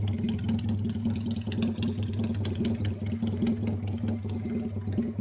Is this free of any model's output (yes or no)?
yes